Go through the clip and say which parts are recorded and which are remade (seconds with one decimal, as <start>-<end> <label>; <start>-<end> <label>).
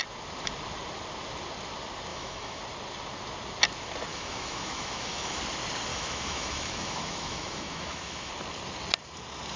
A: 0.0-2.1 recorded; 2.1-2.6 remade; 2.6-4.1 recorded; 4.1-5.4 remade; 5.4-5.9 recorded; 5.9-8.3 remade; 8.3-9.6 recorded